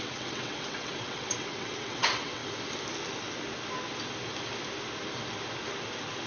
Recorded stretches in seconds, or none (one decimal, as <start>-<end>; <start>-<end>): 2.4-6.3